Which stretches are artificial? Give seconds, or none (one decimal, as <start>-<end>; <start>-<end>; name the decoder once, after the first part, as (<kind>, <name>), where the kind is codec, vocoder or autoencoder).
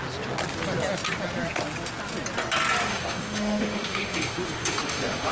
2.9-5.3 (autoencoder, DAC-VAE)